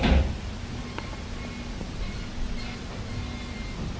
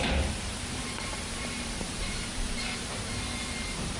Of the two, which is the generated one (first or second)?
second